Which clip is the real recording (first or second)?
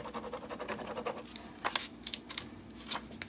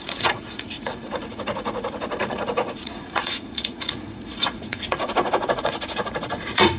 first